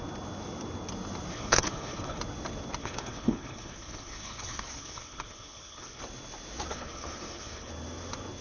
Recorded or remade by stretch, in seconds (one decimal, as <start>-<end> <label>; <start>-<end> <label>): 0.0-1.3 recorded; 1.3-2.2 remade; 2.2-2.8 recorded; 2.8-6.0 remade; 6.0-6.7 recorded; 6.7-7.7 remade; 7.7-8.4 recorded